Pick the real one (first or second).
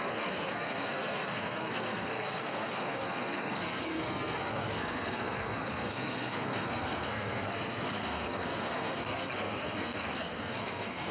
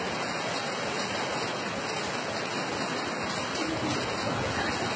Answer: second